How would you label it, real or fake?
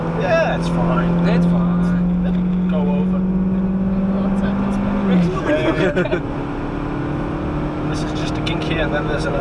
real